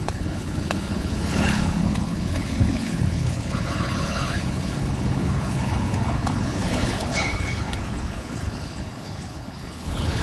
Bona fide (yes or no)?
no